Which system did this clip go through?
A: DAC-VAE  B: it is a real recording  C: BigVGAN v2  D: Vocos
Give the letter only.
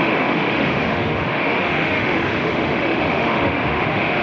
A